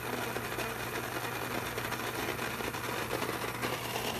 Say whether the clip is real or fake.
real